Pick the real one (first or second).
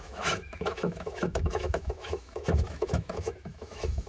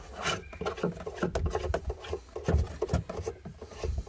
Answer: second